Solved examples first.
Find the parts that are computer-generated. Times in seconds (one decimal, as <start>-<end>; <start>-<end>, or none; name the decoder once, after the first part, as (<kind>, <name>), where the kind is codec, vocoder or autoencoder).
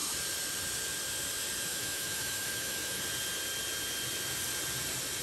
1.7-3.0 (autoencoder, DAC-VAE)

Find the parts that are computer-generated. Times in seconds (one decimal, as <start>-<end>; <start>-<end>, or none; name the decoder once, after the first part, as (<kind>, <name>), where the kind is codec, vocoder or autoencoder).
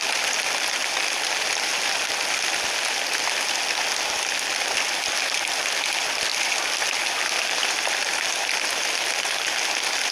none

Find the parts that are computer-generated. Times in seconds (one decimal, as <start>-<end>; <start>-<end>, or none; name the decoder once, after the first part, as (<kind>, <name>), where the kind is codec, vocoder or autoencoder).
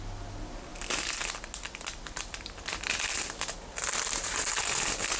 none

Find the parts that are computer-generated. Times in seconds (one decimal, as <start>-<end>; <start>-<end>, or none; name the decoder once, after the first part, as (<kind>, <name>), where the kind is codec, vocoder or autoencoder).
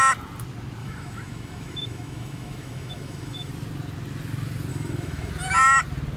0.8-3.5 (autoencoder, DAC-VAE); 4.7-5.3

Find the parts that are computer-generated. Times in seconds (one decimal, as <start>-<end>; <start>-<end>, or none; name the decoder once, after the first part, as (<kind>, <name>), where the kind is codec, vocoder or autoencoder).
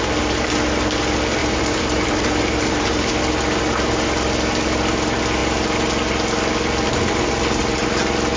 1.4-3.1 (vocoder, BigVGAN v2)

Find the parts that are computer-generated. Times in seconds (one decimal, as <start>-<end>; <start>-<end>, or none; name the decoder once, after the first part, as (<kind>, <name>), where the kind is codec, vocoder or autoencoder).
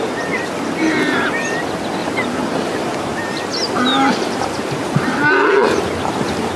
none